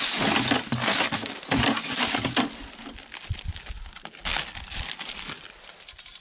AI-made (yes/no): no